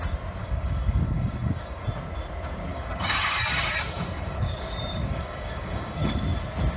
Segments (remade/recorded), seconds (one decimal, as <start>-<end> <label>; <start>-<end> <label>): 0.0-0.4 recorded; 0.4-1.8 remade; 1.8-2.7 recorded; 2.7-6.1 remade; 6.1-6.8 recorded